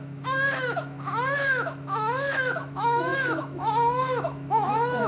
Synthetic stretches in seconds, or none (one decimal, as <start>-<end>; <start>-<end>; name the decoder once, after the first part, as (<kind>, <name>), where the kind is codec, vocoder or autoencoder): 0.0-5.1 (autoencoder, DAC-VAE)